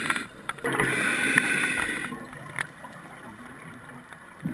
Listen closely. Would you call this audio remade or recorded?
recorded